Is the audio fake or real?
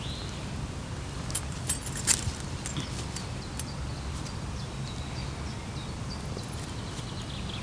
real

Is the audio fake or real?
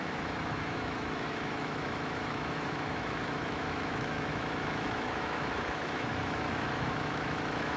fake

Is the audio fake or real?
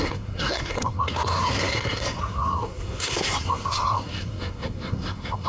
fake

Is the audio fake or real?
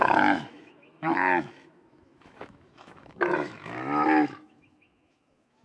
fake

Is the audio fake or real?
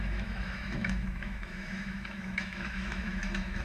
fake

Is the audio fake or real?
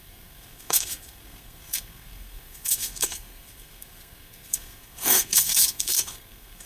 fake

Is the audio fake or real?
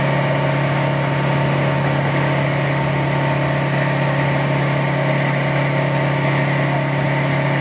real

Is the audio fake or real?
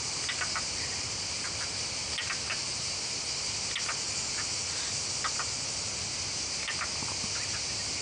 real